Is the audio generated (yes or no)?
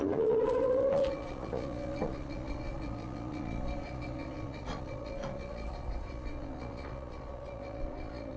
yes